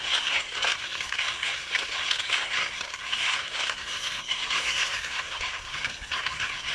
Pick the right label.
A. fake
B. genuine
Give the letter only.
A